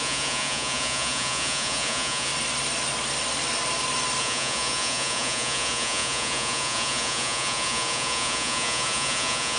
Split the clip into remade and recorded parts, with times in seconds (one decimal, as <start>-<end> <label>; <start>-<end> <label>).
0.0-2.3 remade; 2.3-4.2 recorded; 4.2-9.6 remade